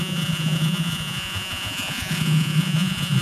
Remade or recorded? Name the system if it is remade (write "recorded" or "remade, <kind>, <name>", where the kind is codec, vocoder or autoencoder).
remade, vocoder, Vocos